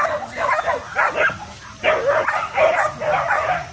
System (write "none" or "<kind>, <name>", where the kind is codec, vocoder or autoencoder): none